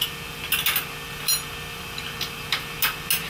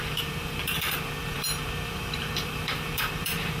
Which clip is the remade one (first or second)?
second